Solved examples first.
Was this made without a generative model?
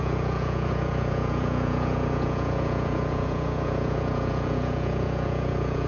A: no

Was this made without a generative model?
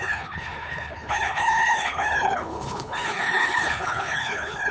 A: no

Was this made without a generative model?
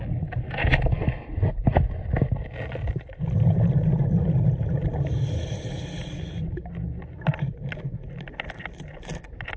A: yes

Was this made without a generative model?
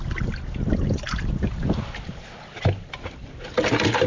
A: yes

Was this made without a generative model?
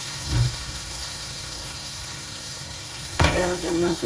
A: no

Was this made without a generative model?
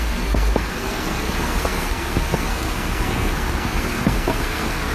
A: no